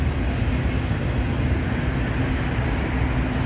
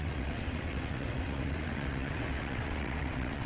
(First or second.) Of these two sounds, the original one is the first